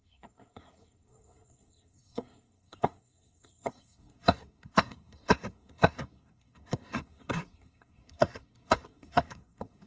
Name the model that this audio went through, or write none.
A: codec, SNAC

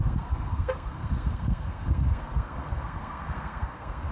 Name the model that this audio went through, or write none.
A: codec, SNAC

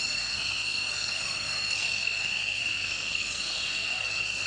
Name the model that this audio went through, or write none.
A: codec, SNAC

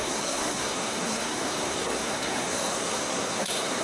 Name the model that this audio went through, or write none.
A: codec, SNAC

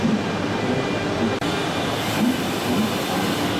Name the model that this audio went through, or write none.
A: none